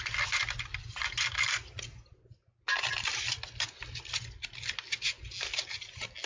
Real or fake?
real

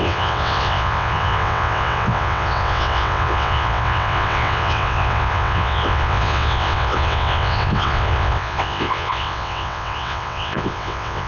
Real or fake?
fake